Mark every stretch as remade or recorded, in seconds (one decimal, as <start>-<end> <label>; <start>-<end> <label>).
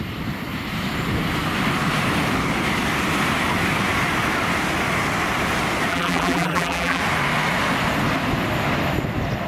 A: 0.0-5.9 recorded; 5.9-7.0 remade; 7.0-9.5 recorded